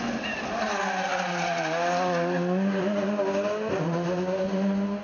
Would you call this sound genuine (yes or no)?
yes